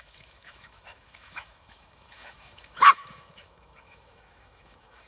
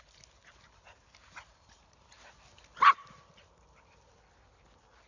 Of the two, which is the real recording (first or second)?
second